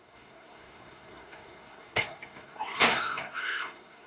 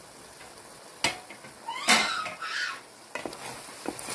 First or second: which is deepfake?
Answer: first